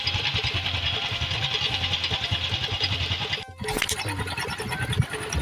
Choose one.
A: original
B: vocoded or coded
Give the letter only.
A